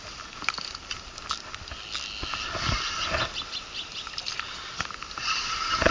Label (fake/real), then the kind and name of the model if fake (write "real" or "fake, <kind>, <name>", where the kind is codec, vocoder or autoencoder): real